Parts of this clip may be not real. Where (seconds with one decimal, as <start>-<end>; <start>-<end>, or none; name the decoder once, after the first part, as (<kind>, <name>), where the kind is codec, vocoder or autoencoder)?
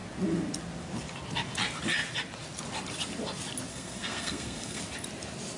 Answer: 3.7-4.8 (codec, SNAC)